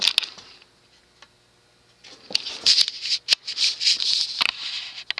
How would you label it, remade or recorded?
recorded